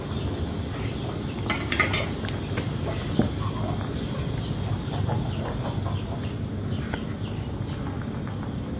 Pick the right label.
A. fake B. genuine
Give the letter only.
B